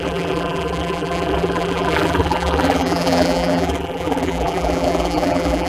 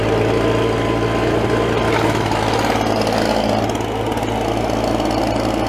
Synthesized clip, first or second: first